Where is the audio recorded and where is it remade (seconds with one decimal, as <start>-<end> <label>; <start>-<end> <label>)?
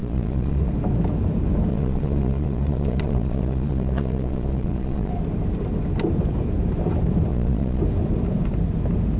0.0-0.7 remade; 0.7-1.7 recorded; 1.7-5.1 remade; 5.1-7.3 recorded; 7.3-7.8 remade; 7.8-9.2 recorded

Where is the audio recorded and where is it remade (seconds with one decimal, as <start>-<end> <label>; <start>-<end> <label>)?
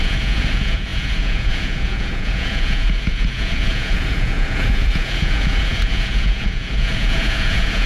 0.0-7.9 remade